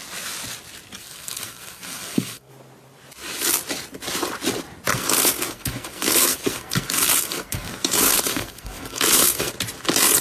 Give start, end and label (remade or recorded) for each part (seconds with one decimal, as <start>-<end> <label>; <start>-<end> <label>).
0.0-1.0 recorded; 1.0-2.5 remade; 2.5-4.9 recorded; 4.9-9.5 remade; 9.5-10.2 recorded